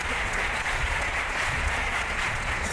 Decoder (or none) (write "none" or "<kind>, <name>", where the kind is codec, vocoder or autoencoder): vocoder, Vocos